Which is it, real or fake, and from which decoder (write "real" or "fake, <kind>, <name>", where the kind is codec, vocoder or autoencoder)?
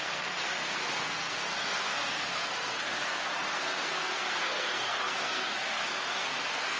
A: fake, codec, SNAC